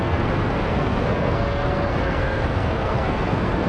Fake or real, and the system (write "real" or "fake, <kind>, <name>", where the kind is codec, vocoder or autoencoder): fake, codec, SNAC